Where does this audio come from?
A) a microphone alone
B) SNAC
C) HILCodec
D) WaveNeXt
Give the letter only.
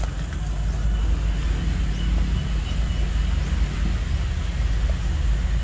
A